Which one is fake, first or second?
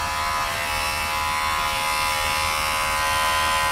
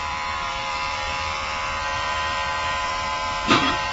second